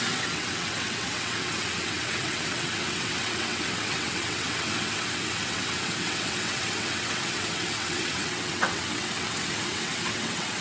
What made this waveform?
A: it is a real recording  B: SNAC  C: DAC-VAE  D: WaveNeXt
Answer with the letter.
D